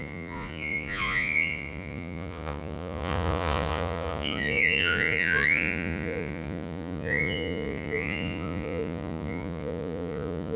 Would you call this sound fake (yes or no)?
yes